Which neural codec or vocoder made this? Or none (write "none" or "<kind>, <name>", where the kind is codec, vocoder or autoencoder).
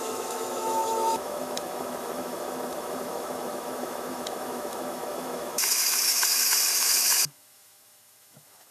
autoencoder, DAC-VAE